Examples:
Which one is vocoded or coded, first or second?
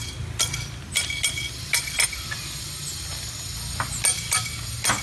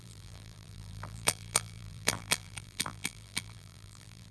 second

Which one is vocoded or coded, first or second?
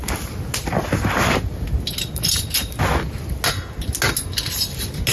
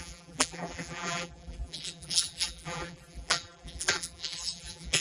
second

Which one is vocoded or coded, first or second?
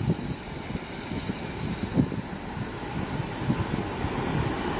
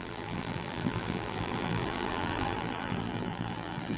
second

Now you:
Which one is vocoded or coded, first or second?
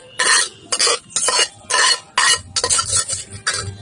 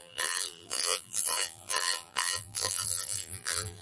second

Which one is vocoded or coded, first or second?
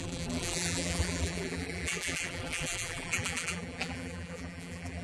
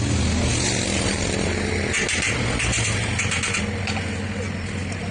first